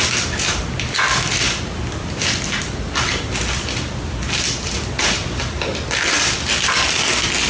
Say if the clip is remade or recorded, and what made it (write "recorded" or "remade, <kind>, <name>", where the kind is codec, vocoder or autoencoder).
recorded